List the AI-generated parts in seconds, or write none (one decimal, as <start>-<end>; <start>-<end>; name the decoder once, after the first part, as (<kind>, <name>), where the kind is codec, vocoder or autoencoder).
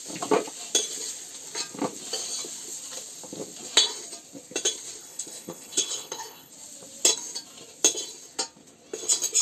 5.0-6.5 (codec, HILCodec)